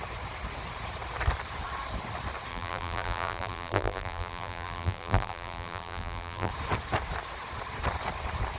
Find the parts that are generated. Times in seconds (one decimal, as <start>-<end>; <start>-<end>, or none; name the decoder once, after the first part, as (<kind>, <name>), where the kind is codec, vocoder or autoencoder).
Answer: 2.5-6.5 (vocoder, BigVGAN v2)

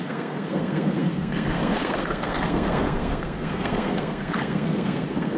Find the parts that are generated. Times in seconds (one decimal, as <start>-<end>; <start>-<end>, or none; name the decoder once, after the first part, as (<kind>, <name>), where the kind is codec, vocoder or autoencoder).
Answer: 0.0-5.4 (codec, SNAC)

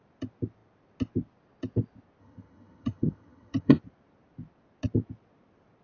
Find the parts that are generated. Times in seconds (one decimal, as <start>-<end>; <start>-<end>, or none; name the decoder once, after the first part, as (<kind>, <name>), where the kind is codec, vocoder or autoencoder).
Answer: 2.2-3.8 (vocoder, HiFi-GAN)

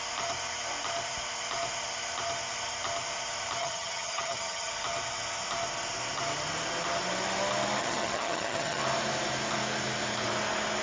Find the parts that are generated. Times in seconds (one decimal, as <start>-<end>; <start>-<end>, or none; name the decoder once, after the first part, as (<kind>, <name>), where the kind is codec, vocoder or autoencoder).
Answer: 3.6-4.7 (vocoder, HiFi-GAN); 7.8-8.8

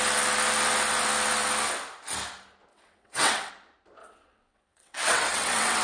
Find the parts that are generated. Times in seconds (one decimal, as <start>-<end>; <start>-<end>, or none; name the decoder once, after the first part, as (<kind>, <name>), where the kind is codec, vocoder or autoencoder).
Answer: 2.7-3.5 (vocoder, WaveNeXt); 4.0-5.8

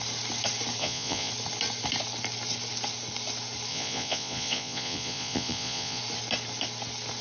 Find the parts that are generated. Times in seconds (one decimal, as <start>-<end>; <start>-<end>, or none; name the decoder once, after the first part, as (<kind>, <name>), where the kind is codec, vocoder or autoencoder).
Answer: 0.8-1.3 (vocoder, Vocos); 3.7-6.0